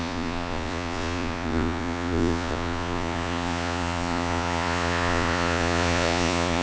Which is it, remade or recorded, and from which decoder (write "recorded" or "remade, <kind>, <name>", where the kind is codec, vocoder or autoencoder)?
remade, vocoder, Vocos